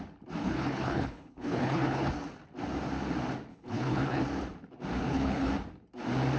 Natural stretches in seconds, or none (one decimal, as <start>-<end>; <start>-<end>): 0.0-0.4; 2.1-3.5; 4.2-5.0; 5.5-6.4

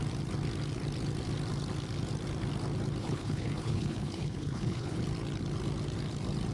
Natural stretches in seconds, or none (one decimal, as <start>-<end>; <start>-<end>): 0.0-3.0; 5.0-6.5

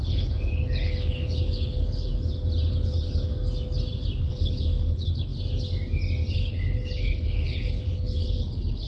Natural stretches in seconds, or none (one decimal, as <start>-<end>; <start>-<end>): 2.1-2.7; 3.3-4.2; 5.3-6.3

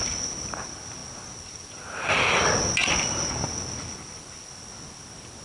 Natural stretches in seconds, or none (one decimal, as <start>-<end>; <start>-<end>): 0.0-5.4

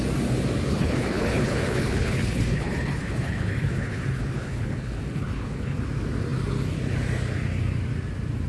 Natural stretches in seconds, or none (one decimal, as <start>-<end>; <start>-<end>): 0.0-0.7; 5.8-8.5